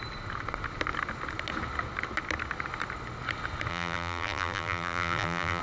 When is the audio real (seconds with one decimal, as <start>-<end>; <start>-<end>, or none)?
0.0-3.7